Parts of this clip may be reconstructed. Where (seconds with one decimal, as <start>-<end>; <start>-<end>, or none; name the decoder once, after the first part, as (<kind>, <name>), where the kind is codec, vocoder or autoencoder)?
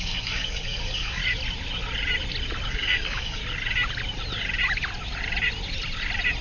0.0-1.2 (codec, DAC); 2.7-3.4